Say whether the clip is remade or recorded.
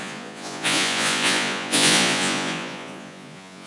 remade